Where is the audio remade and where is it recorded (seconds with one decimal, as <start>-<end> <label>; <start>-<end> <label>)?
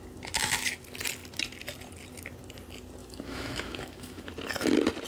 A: 0.0-3.0 recorded; 3.0-4.3 remade; 4.3-5.1 recorded